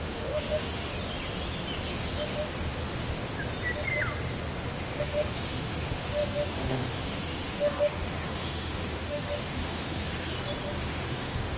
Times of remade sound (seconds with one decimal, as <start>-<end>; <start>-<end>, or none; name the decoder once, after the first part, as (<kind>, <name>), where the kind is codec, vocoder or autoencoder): 0.0-0.9 (autoencoder, DAC-VAE); 5.0-10.3; 10.9-11.6